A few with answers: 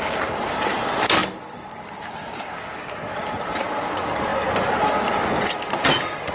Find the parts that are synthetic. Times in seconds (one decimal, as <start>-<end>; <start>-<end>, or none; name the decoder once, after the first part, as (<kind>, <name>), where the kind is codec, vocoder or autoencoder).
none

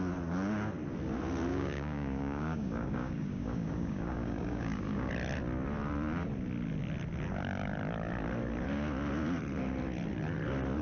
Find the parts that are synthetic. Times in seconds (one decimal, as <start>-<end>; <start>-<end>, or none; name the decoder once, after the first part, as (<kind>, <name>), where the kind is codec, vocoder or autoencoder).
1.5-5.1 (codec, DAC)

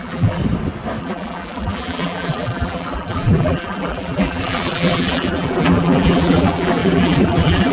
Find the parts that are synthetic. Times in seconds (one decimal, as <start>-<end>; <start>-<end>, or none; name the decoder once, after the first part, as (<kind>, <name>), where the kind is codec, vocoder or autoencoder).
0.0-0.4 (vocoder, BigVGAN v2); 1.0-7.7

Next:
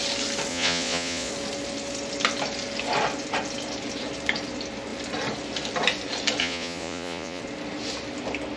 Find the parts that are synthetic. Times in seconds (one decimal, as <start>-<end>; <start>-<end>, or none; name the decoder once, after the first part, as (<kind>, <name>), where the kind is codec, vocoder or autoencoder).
0.5-1.3 (vocoder, Vocos); 6.4-7.4

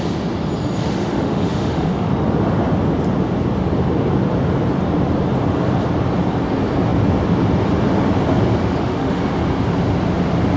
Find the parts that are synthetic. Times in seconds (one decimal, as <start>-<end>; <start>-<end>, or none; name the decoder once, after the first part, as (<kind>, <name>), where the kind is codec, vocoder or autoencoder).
0.8-2.1 (autoencoder, DAC-VAE); 8.6-9.2

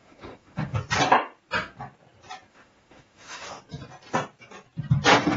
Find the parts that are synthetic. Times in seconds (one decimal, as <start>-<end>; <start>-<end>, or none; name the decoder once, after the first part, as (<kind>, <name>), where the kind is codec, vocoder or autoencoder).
0.0-0.8 (autoencoder, DAC-VAE); 2.5-3.6

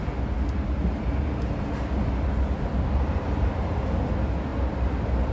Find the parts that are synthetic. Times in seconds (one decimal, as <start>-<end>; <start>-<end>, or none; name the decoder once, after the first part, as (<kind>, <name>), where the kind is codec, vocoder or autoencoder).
none

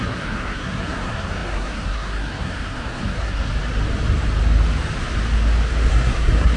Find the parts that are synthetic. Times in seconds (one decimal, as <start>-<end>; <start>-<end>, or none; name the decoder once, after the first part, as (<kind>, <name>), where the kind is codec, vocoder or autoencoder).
0.0-3.5 (codec, SNAC); 5.9-6.6